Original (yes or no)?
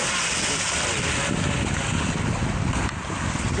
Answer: yes